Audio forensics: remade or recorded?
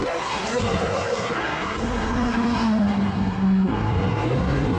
remade